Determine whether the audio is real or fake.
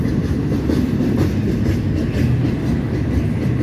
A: real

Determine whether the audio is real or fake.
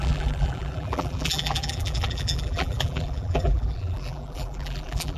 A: fake